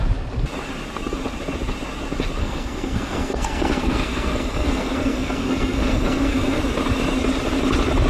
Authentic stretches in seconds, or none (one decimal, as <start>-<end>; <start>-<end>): 0.0-2.4; 6.6-8.1